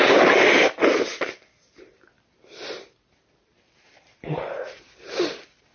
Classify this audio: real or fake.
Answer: real